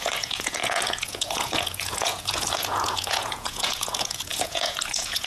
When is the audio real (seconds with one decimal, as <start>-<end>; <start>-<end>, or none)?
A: none